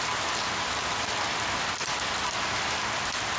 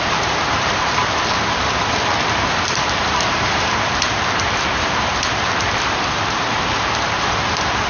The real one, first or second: first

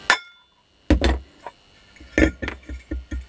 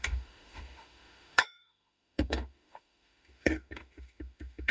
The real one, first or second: first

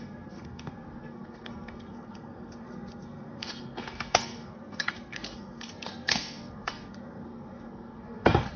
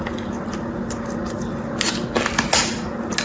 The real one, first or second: second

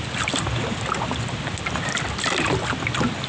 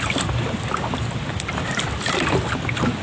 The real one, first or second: first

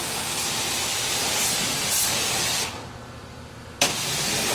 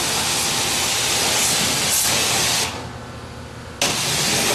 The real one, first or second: second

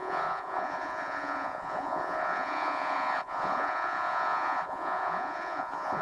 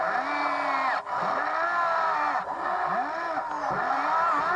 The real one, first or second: second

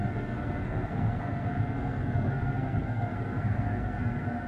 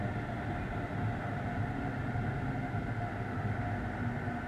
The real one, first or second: second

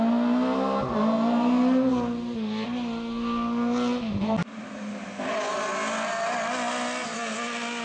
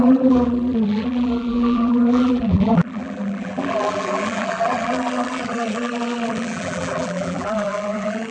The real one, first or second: first